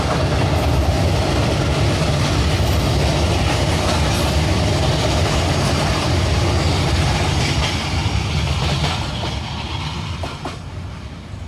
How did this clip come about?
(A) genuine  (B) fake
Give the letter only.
A